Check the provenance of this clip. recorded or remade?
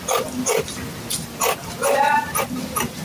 recorded